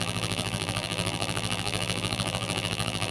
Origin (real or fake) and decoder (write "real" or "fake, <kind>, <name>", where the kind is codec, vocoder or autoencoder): fake, vocoder, BigVGAN v2